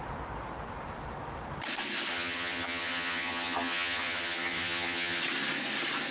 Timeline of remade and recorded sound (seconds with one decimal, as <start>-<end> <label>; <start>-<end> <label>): 0.0-2.1 recorded; 2.1-5.2 remade; 5.2-6.1 recorded

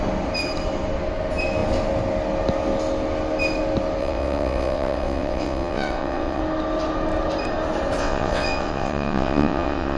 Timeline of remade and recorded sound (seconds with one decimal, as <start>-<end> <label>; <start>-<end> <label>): 0.0-4.0 recorded; 4.0-6.4 remade; 6.4-8.0 recorded; 8.0-10.0 remade

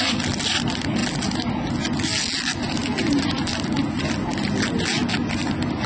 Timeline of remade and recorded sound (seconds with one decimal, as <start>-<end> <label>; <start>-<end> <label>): 0.0-5.9 recorded

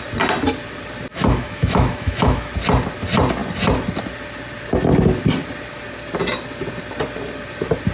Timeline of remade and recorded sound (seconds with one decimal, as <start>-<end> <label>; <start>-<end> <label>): 0.0-1.1 recorded; 1.1-2.5 remade; 2.5-7.9 recorded